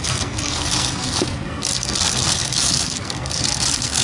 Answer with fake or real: fake